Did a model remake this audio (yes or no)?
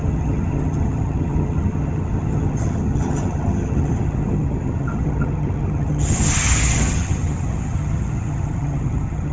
yes